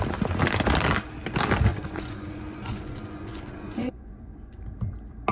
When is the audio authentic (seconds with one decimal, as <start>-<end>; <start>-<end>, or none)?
0.0-1.7; 4.6-5.3